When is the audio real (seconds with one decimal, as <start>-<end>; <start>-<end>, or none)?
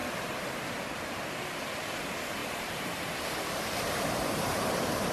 1.3-2.4; 4.6-5.1